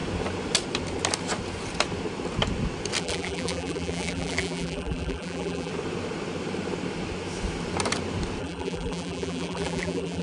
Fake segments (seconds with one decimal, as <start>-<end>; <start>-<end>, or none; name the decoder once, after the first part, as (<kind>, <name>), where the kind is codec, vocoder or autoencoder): 3.0-5.7 (vocoder, BigVGAN v2); 8.4-10.2